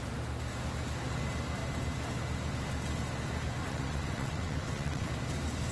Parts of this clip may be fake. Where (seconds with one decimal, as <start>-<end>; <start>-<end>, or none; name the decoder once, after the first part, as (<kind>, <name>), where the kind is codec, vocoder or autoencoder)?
3.6-5.1 (vocoder, WaveNeXt)

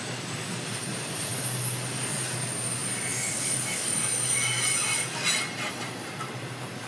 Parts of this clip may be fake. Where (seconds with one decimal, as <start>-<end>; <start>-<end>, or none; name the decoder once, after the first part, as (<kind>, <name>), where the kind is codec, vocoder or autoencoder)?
none

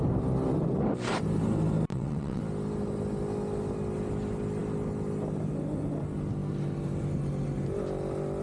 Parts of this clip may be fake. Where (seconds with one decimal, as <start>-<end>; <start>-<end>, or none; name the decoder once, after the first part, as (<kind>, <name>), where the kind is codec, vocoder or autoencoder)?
1.9-2.4 (vocoder, WaveNeXt)

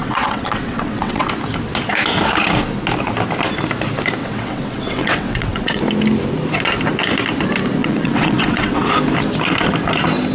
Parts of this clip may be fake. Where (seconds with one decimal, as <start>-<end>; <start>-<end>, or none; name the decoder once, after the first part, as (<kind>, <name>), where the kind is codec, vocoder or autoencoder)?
0.0-1.3 (vocoder, WaveNeXt); 4.2-5.8; 7.8-8.9

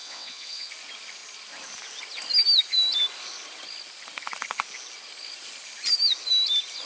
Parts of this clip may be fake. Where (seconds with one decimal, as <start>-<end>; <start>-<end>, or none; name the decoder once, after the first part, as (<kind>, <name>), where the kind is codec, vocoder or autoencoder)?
0.0-0.7 (vocoder, WaveNeXt)

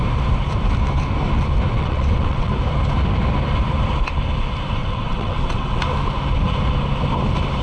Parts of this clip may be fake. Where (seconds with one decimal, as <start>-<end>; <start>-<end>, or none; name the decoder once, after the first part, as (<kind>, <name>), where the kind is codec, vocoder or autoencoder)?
1.7-2.5 (vocoder, WaveNeXt); 4.8-5.8